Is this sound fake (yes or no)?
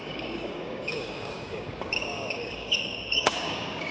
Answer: yes